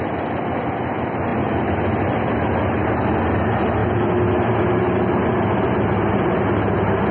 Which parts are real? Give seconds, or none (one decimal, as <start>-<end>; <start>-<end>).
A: 0.0-7.1